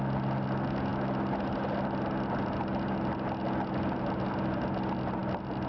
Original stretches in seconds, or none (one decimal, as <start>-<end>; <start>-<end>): 0.0-5.7